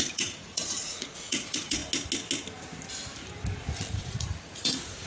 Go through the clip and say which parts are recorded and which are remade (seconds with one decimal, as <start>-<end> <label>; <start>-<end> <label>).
0.0-1.8 remade; 1.8-3.9 recorded; 3.9-5.1 remade